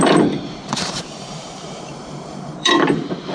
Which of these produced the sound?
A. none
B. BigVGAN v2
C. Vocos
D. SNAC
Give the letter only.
B